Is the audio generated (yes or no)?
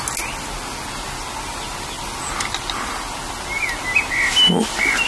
no